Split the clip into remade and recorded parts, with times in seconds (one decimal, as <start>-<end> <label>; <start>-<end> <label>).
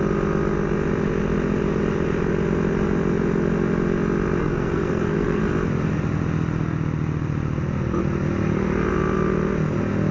0.0-4.4 recorded; 4.4-5.4 remade; 5.4-10.1 recorded